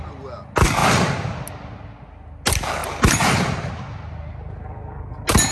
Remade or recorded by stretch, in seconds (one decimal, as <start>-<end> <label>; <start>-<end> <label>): 0.0-5.5 recorded